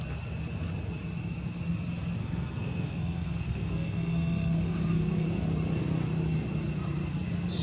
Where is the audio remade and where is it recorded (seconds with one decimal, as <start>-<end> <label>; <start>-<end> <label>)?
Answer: 0.0-2.2 recorded; 2.2-5.3 remade; 5.3-7.6 recorded

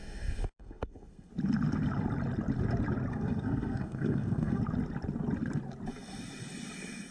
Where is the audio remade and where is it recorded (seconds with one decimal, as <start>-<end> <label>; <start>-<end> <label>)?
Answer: 0.0-1.3 remade; 1.3-3.1 recorded; 3.1-4.6 remade; 4.6-7.1 recorded